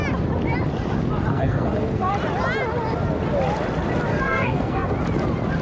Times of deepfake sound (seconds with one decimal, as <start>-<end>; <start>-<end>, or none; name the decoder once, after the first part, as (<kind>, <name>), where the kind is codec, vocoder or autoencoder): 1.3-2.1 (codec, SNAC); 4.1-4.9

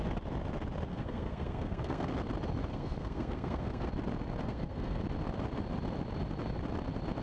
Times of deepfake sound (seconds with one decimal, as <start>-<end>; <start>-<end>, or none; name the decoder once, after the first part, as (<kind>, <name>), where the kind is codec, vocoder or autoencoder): 0.9-2.1 (codec, SNAC); 2.7-3.9; 4.4-5.0

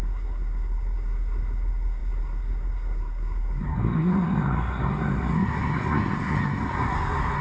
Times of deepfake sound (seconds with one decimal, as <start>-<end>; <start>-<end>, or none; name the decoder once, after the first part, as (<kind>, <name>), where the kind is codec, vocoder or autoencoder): 0.0-7.4 (codec, SNAC)